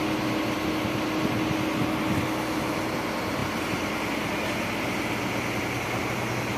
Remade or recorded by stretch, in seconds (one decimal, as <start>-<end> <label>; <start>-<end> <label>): 0.0-6.6 recorded